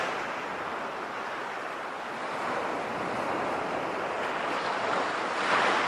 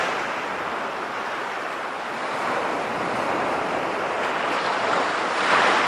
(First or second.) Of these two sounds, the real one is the first